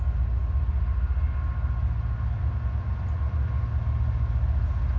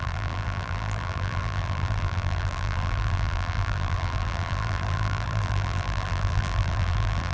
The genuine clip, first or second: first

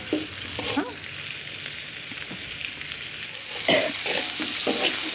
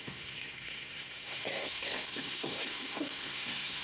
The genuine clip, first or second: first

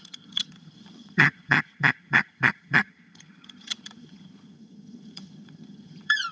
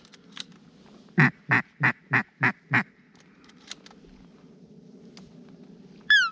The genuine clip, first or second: second